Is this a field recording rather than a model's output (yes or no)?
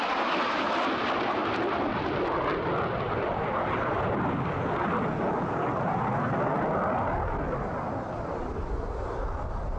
yes